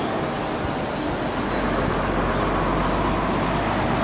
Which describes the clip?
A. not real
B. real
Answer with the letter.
B